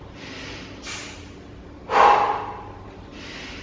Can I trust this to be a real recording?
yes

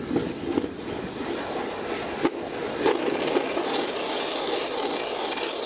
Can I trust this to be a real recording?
yes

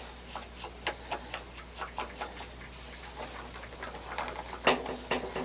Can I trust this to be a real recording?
yes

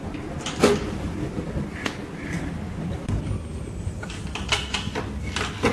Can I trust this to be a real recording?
yes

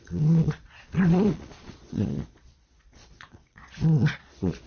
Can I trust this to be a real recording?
no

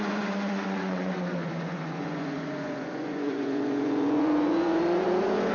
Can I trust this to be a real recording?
no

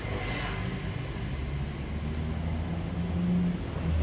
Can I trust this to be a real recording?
yes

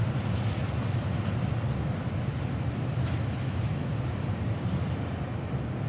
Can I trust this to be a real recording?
yes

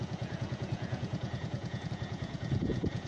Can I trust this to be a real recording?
no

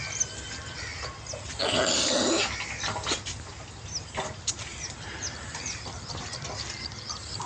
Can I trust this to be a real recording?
yes